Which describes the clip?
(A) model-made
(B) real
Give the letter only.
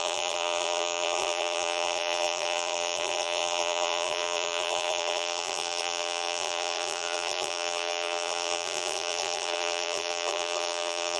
A